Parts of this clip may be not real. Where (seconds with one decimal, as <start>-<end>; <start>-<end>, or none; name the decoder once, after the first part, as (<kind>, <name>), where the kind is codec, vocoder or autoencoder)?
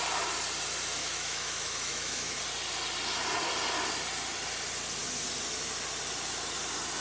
1.0-2.4 (autoencoder, DAC-VAE)